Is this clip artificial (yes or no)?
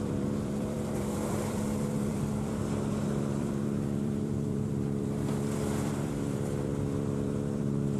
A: yes